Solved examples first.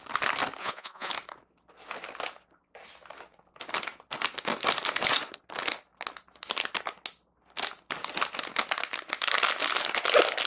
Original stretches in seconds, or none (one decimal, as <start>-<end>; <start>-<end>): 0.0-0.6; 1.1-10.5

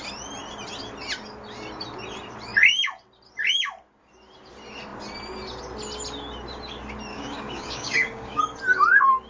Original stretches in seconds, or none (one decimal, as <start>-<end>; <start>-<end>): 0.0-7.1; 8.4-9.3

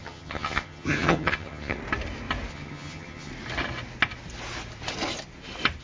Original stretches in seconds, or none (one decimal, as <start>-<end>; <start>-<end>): 1.8-2.5; 3.3-5.8